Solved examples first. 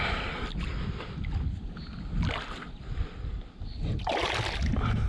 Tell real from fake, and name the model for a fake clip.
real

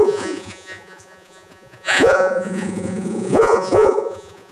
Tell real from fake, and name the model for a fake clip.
fake, vocoder, Vocos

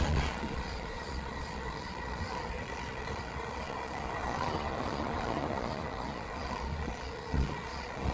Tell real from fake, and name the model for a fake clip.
fake, vocoder, Vocos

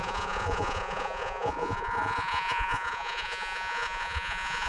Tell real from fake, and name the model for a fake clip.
fake, vocoder, Vocos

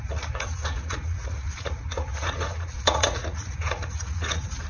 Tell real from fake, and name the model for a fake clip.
fake, vocoder, Vocos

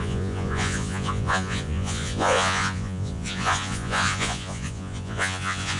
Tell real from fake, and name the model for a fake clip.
fake, vocoder, Vocos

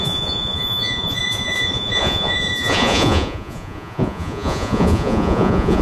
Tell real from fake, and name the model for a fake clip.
fake, vocoder, Vocos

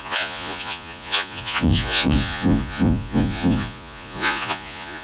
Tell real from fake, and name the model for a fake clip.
fake, vocoder, Vocos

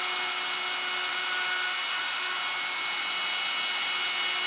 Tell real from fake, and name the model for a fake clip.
real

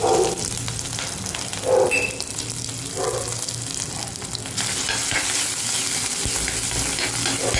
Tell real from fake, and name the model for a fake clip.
real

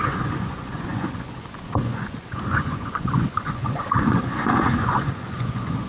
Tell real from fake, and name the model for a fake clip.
fake, vocoder, Vocos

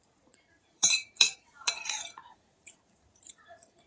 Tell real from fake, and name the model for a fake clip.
fake, vocoder, Vocos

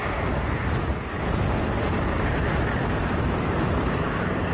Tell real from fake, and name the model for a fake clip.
real